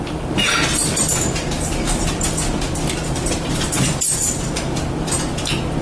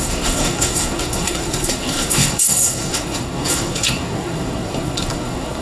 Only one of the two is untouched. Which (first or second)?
first